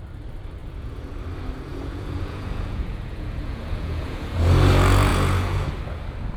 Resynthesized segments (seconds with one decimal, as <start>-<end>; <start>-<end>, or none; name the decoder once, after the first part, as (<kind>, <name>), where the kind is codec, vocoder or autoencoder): 0.6-1.2 (vocoder, Vocos); 1.7-4.5; 5.1-5.7